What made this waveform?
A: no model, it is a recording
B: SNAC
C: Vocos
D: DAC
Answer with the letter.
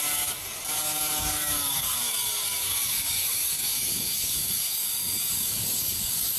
D